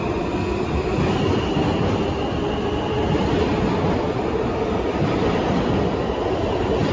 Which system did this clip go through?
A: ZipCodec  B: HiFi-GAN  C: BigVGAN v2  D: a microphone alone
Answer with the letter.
D